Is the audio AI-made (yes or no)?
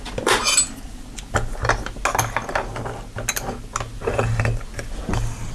no